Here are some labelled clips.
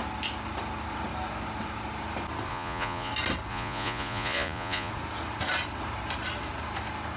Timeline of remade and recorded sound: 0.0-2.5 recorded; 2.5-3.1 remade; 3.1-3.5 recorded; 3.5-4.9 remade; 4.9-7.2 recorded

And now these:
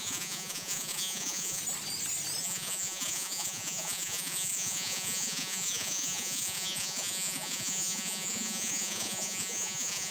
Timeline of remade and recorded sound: 0.0-1.6 remade; 1.6-2.4 recorded; 2.4-10.1 remade

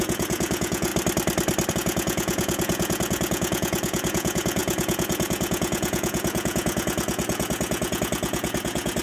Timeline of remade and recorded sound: 0.0-0.9 remade; 0.9-1.7 recorded; 1.7-9.0 remade